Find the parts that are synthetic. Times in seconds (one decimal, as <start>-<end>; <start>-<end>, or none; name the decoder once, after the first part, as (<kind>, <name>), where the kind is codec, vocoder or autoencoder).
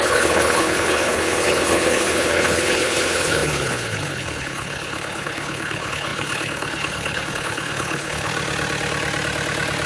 0.0-8.3 (codec, HILCodec)